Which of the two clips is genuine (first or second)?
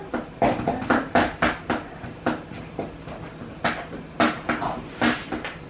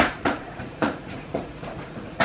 first